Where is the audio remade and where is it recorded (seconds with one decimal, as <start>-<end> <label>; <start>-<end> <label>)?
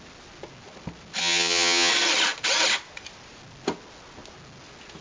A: 0.0-1.2 recorded; 1.2-1.9 remade; 1.9-5.0 recorded